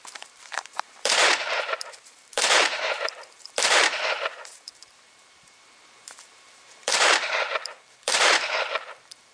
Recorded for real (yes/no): no